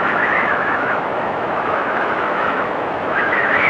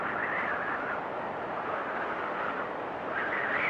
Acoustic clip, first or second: second